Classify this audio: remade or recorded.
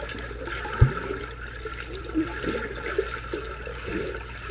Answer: recorded